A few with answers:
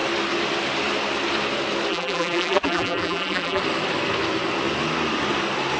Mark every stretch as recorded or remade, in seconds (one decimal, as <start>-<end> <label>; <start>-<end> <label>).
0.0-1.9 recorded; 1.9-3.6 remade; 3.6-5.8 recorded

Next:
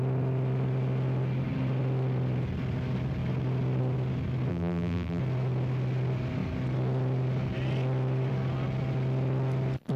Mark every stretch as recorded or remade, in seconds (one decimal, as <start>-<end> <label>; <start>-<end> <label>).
0.0-4.5 recorded; 4.5-5.2 remade; 5.2-10.0 recorded

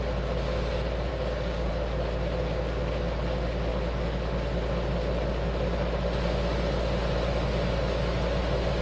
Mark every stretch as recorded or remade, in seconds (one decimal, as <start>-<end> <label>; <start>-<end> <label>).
0.0-1.1 recorded; 1.1-1.7 remade; 1.7-8.8 recorded

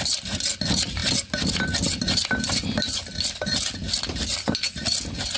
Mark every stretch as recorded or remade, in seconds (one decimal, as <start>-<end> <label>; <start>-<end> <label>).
0.0-5.4 recorded